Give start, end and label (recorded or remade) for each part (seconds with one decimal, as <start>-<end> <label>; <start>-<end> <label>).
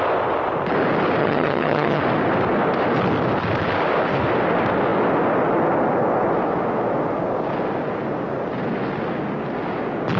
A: 0.0-1.2 recorded; 1.2-2.0 remade; 2.0-10.2 recorded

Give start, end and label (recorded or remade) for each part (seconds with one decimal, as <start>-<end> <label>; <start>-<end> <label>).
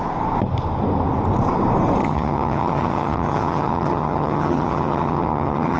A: 0.0-2.0 recorded; 2.0-5.8 remade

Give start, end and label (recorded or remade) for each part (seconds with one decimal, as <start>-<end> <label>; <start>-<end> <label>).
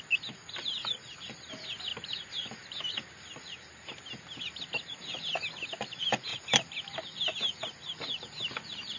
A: 0.0-9.0 recorded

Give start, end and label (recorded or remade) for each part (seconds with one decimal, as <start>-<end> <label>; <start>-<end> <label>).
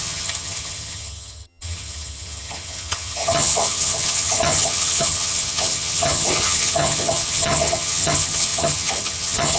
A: 0.0-9.6 remade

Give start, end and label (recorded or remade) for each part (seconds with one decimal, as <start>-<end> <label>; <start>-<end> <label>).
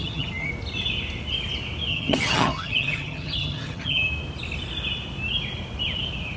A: 0.0-0.5 remade; 0.5-1.9 recorded; 1.9-4.1 remade; 4.1-6.4 recorded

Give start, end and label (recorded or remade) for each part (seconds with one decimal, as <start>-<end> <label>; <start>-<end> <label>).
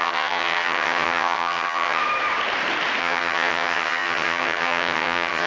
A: 0.0-2.0 remade; 2.0-3.0 recorded; 3.0-5.5 remade